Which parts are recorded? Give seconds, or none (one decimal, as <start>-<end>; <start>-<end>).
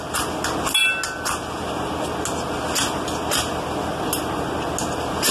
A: 0.0-5.3